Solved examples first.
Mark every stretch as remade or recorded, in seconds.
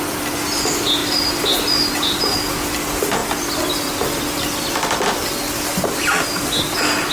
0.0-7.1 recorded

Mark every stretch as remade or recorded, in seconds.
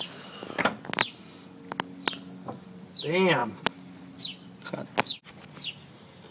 0.0-6.3 recorded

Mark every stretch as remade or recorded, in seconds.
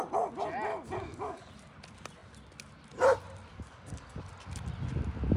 0.0-0.7 recorded; 0.7-1.5 remade; 1.5-3.5 recorded; 3.5-4.2 remade; 4.2-5.4 recorded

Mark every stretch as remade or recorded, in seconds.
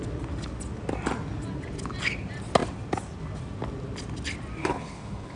0.0-4.6 recorded; 4.6-5.4 remade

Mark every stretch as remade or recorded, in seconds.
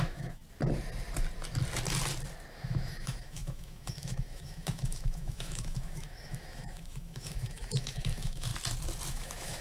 0.0-0.4 remade; 0.4-2.5 recorded; 2.5-8.5 remade; 8.5-9.1 recorded; 9.1-9.6 remade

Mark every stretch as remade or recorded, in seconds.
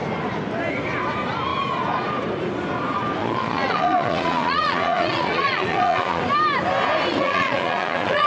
0.0-3.2 recorded; 3.2-6.2 remade; 6.2-7.1 recorded; 7.1-8.3 remade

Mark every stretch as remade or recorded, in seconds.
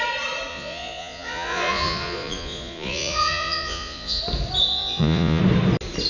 0.0-0.5 recorded; 0.5-4.2 remade; 4.2-4.7 recorded; 4.7-5.4 remade; 5.4-6.1 recorded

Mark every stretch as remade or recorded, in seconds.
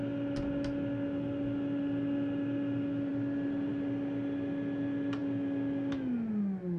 0.0-6.8 recorded